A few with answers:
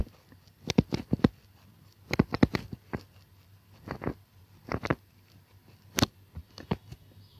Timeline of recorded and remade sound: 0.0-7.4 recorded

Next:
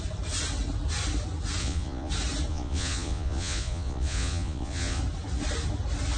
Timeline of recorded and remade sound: 0.0-1.6 recorded; 1.6-2.1 remade; 2.1-2.5 recorded; 2.5-5.0 remade; 5.0-6.2 recorded

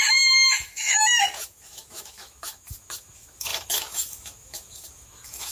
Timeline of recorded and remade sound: 0.0-5.5 remade

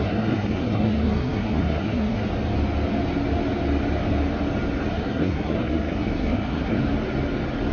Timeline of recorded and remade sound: 0.0-2.2 remade; 2.2-4.9 recorded; 4.9-6.8 remade; 6.8-7.7 recorded

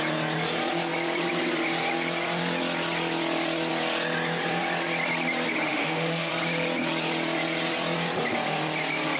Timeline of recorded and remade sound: 0.0-5.7 recorded; 5.7-6.3 remade; 6.3-9.2 recorded

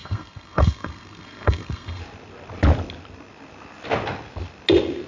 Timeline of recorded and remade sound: 0.0-2.0 remade; 2.0-5.1 recorded